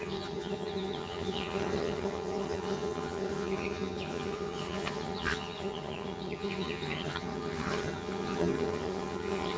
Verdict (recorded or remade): remade